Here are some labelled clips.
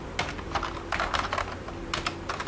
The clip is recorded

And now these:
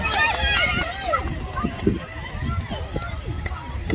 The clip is recorded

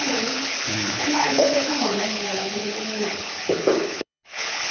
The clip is remade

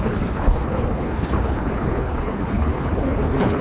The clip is remade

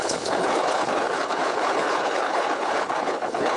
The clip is remade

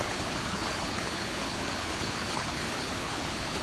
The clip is remade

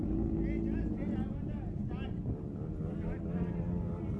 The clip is recorded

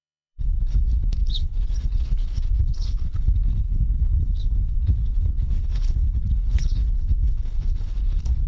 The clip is remade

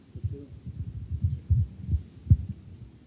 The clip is recorded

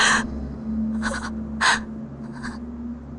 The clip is recorded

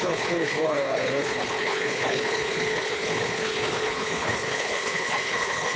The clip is remade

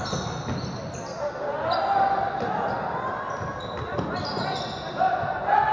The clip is recorded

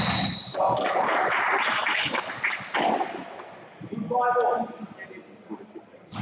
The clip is recorded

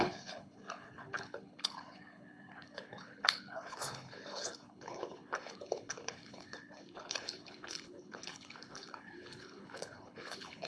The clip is remade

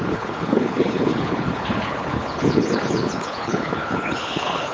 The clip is remade